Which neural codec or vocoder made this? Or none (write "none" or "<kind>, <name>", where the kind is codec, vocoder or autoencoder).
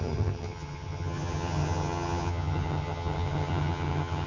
vocoder, HiFi-GAN